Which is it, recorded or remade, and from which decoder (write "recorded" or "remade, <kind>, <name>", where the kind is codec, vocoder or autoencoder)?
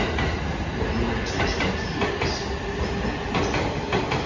recorded